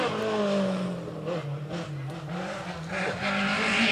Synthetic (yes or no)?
no